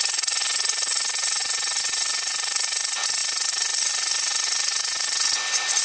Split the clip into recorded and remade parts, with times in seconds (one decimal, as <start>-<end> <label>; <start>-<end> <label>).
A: 0.0-5.8 recorded